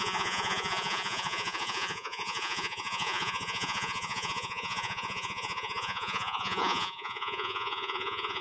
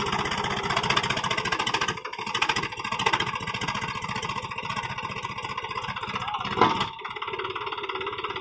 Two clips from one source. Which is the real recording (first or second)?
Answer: second